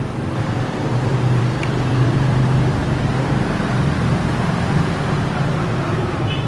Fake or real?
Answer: fake